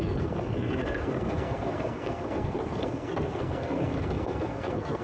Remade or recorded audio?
remade